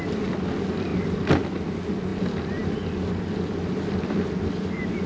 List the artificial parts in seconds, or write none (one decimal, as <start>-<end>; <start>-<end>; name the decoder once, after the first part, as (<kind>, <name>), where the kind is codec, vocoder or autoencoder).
none